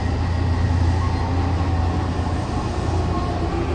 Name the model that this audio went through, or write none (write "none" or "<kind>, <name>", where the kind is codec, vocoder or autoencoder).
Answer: none